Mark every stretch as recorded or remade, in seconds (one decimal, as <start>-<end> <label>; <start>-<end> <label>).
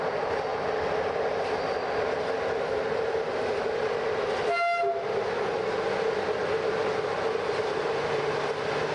0.0-8.9 recorded